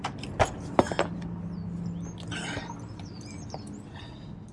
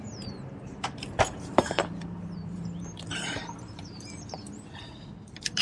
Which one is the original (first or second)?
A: first